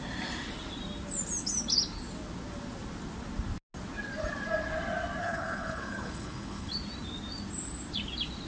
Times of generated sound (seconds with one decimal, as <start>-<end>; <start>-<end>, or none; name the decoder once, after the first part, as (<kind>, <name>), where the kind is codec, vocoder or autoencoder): 5.2-6.7 (codec, HILCodec)

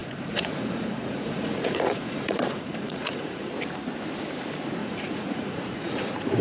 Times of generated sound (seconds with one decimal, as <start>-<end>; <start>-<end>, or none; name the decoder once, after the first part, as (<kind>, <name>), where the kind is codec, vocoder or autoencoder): 0.0-3.5 (vocoder, Vocos); 4.8-5.9